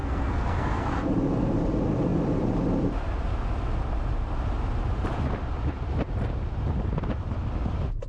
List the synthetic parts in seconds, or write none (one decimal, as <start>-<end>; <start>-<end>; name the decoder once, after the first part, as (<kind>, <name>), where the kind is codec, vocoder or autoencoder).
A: 0.0-1.1 (codec, SNAC)